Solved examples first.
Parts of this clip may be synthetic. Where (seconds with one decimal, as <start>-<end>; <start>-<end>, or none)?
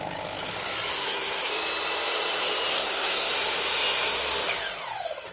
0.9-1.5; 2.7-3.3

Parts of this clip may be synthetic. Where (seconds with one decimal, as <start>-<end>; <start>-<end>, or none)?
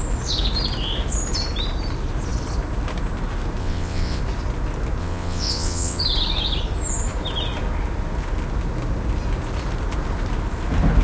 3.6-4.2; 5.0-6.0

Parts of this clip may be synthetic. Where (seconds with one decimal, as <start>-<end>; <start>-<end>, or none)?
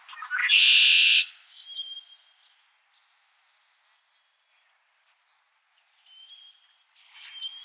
0.4-1.3